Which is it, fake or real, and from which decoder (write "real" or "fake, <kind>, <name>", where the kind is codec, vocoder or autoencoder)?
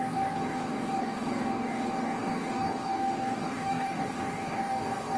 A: fake, codec, DAC